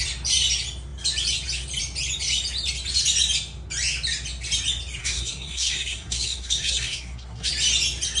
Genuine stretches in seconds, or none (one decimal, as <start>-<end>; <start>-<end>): 0.0-5.0; 7.5-8.2